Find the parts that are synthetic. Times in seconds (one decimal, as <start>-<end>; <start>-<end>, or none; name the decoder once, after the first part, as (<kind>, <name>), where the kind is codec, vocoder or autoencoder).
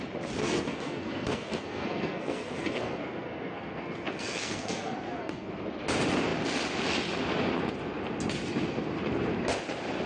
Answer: 0.4-5.5 (codec, SNAC)